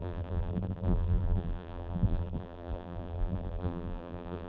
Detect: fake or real fake